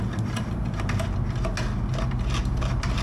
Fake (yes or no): no